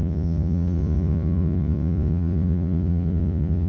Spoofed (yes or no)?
yes